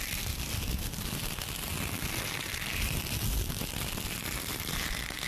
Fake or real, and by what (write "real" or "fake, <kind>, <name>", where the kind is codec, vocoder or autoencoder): real